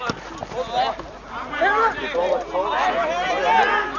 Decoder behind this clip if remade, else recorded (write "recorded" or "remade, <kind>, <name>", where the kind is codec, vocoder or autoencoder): recorded